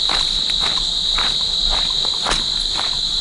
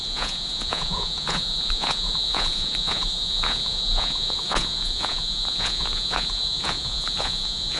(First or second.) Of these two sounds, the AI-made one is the second